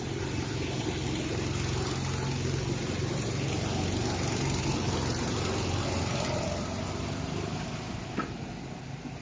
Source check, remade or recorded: recorded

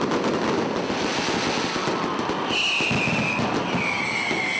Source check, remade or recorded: recorded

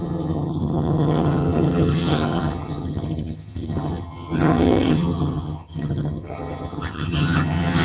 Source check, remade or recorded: remade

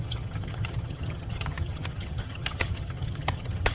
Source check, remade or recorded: remade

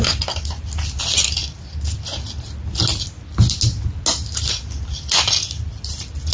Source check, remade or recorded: recorded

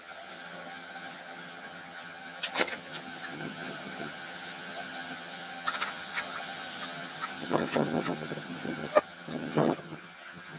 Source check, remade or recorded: remade